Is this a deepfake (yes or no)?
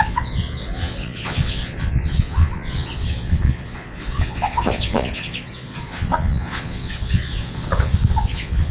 yes